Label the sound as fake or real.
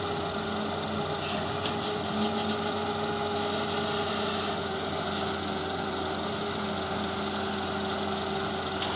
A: real